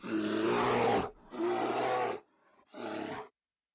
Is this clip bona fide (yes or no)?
yes